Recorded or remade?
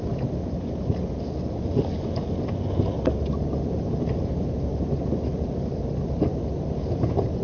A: recorded